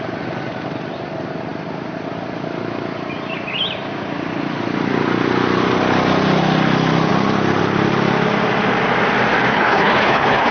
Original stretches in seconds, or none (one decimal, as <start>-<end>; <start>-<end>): 0.0-9.5

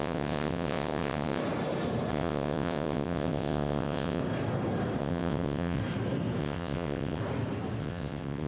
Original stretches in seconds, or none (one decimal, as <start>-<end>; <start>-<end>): 1.4-2.1; 4.2-5.0; 5.8-6.4; 7.2-7.8

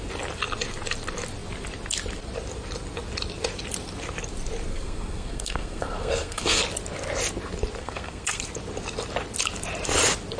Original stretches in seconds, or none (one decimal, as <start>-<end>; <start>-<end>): 0.0-4.7; 6.6-7.8; 8.4-10.4

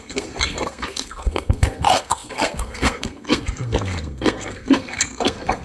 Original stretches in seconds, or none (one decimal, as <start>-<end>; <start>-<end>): none

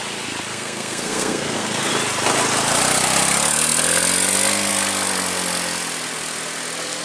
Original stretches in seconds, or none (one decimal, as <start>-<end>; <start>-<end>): 0.0-0.5; 1.9-7.0

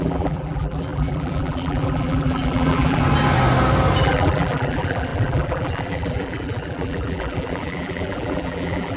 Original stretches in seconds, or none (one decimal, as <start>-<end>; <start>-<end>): 3.0-4.0

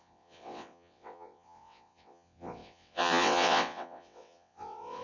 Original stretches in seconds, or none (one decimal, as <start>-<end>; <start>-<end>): none